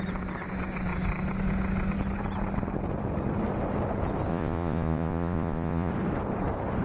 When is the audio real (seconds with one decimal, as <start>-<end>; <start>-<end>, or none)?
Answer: 0.0-4.3; 5.9-6.8